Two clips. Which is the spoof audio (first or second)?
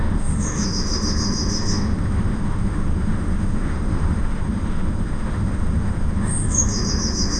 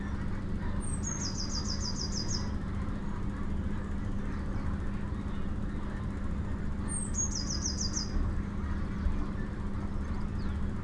first